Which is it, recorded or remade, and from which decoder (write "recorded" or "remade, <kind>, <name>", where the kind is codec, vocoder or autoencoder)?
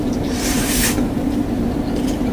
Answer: remade, vocoder, BigVGAN v2